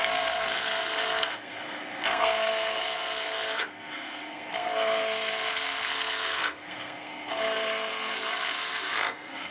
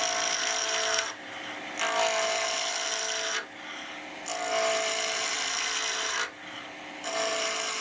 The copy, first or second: first